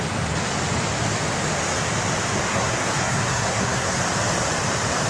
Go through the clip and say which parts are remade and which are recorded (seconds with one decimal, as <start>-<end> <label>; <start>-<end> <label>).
0.0-2.5 recorded; 2.5-4.0 remade; 4.0-5.1 recorded